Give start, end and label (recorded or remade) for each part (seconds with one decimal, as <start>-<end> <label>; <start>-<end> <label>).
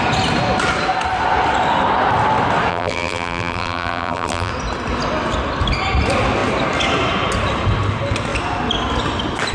0.0-2.7 recorded; 2.7-4.5 remade; 4.5-9.5 recorded